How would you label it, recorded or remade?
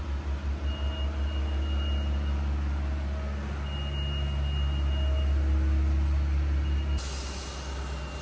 recorded